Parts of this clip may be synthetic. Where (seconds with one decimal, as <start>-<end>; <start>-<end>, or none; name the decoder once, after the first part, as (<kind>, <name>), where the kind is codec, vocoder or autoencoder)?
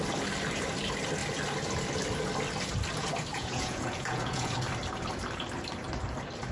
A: 3.3-4.5 (vocoder, Vocos)